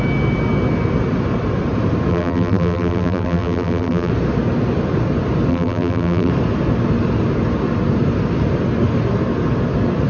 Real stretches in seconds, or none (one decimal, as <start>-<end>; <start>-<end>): 0.0-2.1; 4.1-5.5; 6.3-10.1